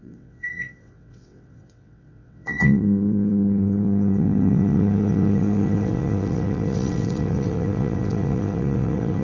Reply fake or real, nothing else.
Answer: fake